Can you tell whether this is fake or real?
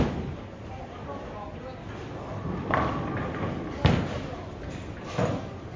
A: real